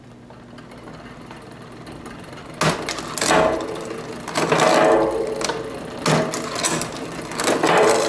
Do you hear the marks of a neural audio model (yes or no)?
no